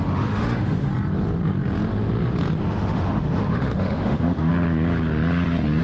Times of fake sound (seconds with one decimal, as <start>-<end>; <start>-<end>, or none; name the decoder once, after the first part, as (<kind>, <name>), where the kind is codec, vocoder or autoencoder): 0.0-0.9 (autoencoder, DAC-VAE); 2.6-4.5